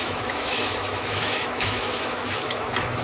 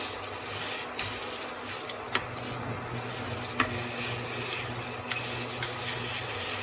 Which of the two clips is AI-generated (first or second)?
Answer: first